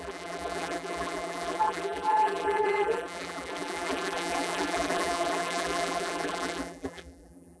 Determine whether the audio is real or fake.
fake